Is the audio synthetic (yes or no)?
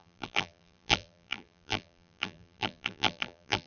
yes